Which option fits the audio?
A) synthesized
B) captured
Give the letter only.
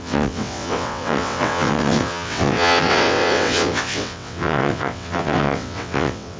A